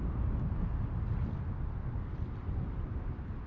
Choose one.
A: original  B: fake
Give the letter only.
A